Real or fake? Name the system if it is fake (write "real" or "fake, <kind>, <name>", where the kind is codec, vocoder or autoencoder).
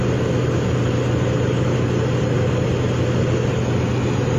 real